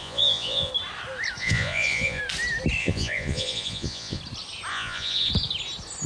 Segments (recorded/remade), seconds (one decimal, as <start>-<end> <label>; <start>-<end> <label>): 0.0-0.7 remade; 0.7-1.4 recorded; 1.4-2.2 remade; 2.2-2.8 recorded; 2.8-4.2 remade; 4.2-4.7 recorded; 4.7-5.3 remade; 5.3-6.1 recorded